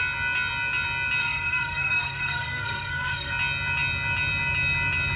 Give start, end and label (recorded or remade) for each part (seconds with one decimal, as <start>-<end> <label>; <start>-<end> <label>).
0.0-1.2 recorded; 1.2-3.3 remade; 3.3-5.2 recorded

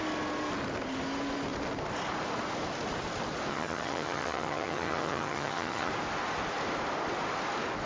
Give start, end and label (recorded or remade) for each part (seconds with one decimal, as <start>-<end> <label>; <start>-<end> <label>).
0.0-3.5 recorded; 3.5-5.9 remade; 5.9-7.9 recorded

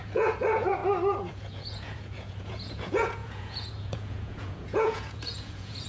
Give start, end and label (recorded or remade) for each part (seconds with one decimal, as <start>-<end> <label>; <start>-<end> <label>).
0.0-0.8 remade; 0.8-1.3 recorded; 1.3-5.9 remade

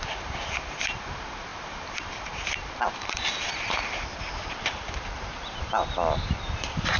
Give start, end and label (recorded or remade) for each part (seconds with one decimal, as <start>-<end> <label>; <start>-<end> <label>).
0.0-7.0 remade

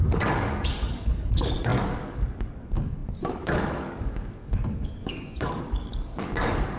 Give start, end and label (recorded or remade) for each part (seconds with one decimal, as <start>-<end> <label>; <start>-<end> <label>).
0.0-6.8 remade

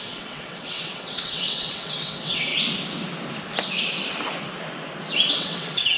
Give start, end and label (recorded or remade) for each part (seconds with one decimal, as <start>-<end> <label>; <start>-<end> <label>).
0.0-2.5 remade; 2.5-5.3 recorded; 5.3-6.0 remade